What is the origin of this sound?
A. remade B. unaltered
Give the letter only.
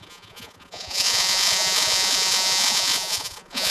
A